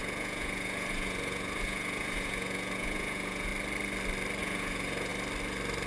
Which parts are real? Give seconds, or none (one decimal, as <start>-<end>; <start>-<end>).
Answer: 3.5-4.4; 5.1-5.9